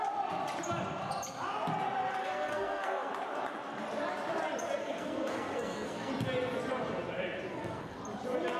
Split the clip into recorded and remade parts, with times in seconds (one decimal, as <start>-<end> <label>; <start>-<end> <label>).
0.0-2.2 recorded; 2.2-3.1 remade; 3.1-4.8 recorded; 4.8-6.1 remade; 6.1-7.5 recorded; 7.5-8.0 remade; 8.0-8.6 recorded